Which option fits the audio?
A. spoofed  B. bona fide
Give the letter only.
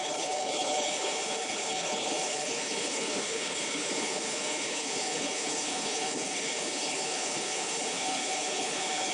A